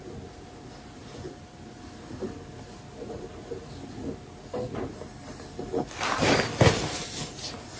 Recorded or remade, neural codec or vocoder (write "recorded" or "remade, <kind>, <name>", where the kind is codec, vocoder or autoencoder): recorded